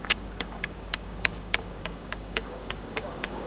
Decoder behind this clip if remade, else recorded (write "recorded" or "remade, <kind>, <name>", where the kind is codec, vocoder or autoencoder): remade, codec, DAC